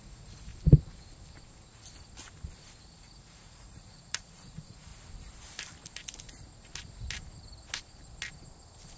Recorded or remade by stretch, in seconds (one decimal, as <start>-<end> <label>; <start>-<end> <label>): 0.0-0.5 remade; 0.5-2.9 recorded; 2.9-4.9 remade; 4.9-9.0 recorded